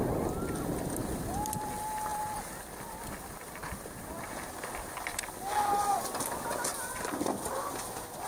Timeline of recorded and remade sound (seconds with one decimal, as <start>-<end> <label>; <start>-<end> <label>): 0.0-1.0 recorded; 1.0-1.7 remade; 1.7-2.1 recorded; 2.1-5.2 remade; 5.2-6.7 recorded; 6.7-7.7 remade; 7.7-8.3 recorded